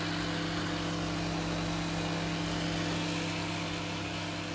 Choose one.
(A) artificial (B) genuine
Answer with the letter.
B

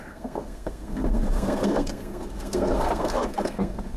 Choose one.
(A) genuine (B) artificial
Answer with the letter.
B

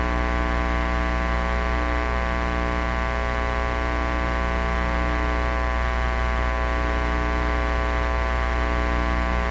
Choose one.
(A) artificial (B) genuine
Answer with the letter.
B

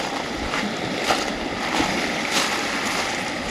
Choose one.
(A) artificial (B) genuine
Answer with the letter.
A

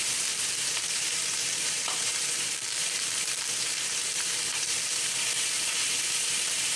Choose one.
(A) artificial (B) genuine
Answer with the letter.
A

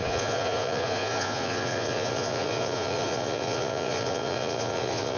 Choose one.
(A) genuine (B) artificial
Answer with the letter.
B